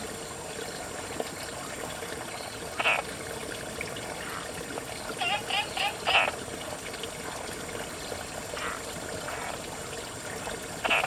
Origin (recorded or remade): recorded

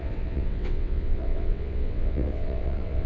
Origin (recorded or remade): remade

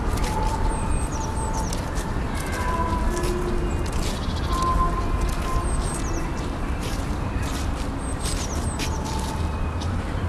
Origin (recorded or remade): recorded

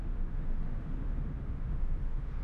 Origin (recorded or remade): remade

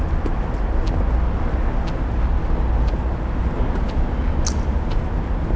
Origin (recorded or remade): recorded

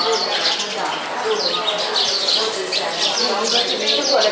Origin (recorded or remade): recorded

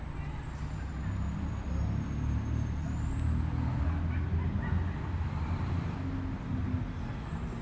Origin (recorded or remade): recorded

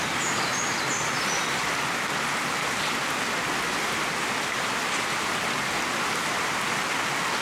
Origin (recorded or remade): recorded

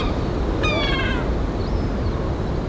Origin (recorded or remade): recorded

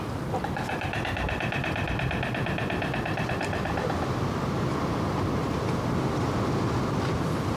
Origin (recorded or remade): recorded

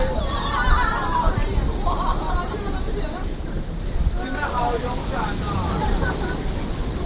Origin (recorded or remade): recorded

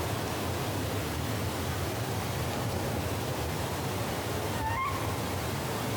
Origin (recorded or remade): recorded